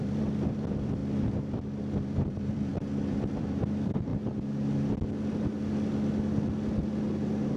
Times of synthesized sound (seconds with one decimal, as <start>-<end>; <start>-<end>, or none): 0.0-1.0; 2.0-4.1